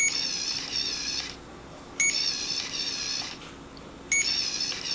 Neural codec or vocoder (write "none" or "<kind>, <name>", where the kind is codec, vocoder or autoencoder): none